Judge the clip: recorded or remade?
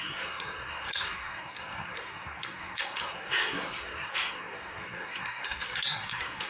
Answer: remade